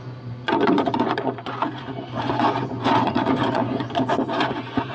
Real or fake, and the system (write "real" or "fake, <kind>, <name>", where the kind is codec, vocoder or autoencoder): fake, vocoder, Vocos